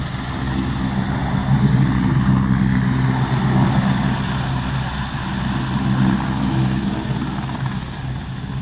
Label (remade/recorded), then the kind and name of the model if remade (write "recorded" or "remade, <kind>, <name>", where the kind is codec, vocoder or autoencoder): recorded